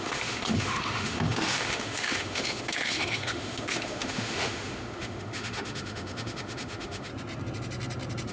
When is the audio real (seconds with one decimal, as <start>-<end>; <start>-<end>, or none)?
7.1-8.3